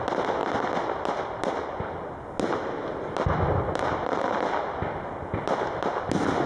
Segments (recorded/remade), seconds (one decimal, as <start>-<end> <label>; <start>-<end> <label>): 0.0-6.5 recorded